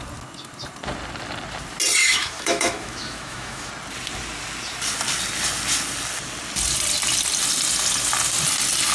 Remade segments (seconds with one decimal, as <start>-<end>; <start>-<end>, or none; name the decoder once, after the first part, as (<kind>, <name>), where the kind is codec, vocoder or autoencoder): 2.0-3.7 (autoencoder, DAC-VAE)